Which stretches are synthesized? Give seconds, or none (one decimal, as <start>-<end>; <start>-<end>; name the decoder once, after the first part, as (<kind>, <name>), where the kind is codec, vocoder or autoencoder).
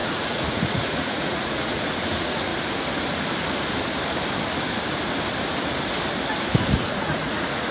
0.0-2.5 (vocoder, Vocos); 6.7-7.7